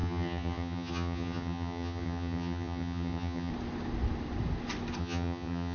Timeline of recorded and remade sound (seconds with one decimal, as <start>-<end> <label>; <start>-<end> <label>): 0.0-3.5 remade; 3.5-5.0 recorded; 5.0-5.7 remade